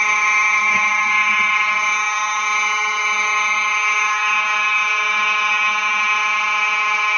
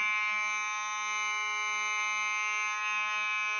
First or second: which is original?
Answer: second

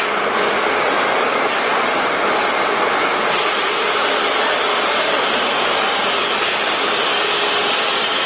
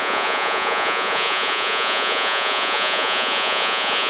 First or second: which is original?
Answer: first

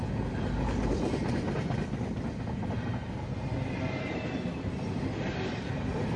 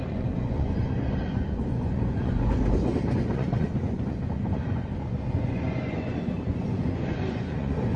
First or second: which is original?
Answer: first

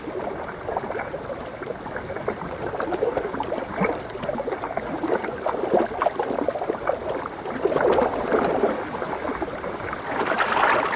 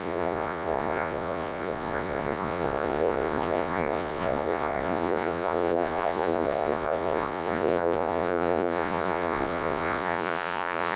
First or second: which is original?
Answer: first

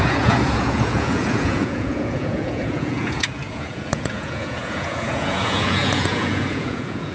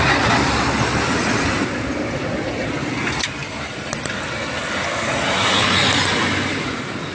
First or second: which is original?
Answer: second